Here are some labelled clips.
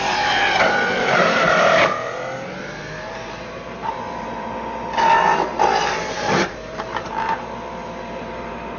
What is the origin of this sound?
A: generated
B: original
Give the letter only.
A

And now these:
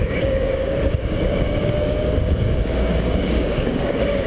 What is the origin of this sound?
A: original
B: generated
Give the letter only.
B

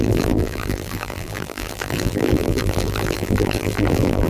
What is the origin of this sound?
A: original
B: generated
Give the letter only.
B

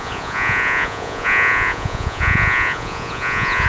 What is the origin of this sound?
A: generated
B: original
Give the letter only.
A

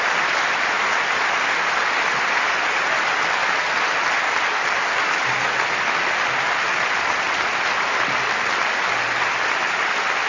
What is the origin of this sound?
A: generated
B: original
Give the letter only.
B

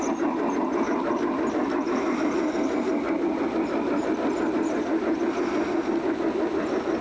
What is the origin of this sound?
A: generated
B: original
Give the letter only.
B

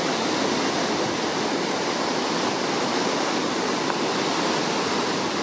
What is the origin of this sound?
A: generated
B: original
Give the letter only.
B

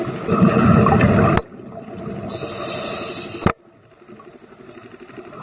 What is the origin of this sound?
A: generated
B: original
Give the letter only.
B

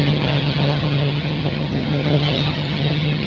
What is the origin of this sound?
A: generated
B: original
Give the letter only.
A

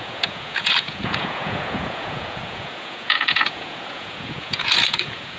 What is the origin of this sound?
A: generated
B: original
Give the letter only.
A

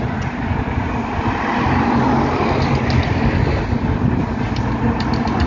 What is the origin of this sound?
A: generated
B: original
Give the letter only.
B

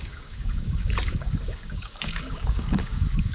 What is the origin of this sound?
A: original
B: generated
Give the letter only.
B